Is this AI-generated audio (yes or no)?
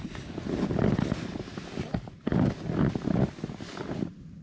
no